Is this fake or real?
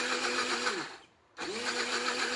real